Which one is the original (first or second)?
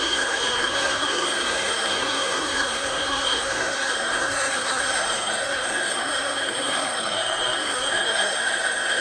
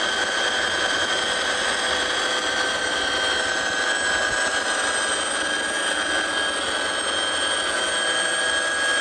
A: second